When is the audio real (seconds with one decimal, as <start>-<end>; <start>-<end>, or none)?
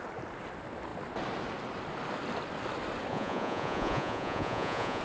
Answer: 0.0-3.1